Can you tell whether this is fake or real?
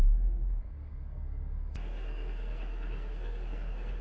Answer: fake